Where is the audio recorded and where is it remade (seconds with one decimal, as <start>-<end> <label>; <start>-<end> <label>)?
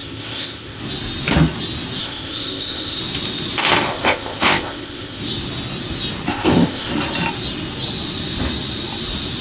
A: 0.0-0.8 remade; 0.8-2.0 recorded; 2.0-3.0 remade; 3.0-3.9 recorded; 3.9-5.2 remade; 5.2-6.3 recorded; 6.3-6.9 remade; 6.9-9.4 recorded